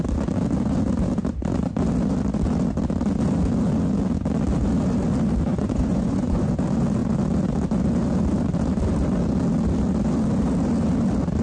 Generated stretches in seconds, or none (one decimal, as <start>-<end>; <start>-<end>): 5.5-6.5